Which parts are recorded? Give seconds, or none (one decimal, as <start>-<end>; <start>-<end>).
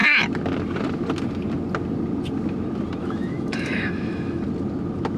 0.0-3.0; 4.4-5.2